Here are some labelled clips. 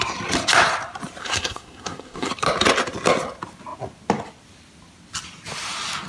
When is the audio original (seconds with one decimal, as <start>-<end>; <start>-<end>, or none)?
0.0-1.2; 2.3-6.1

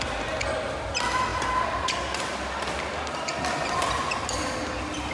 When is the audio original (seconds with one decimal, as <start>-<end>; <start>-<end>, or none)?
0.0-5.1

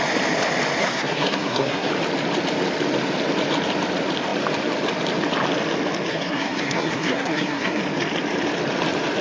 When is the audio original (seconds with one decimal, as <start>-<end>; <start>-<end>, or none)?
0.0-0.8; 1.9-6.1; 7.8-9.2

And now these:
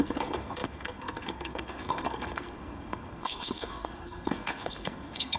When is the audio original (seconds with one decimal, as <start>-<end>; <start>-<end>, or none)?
none

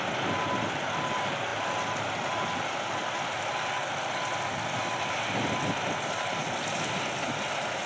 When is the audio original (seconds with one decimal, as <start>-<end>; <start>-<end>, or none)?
0.0-7.9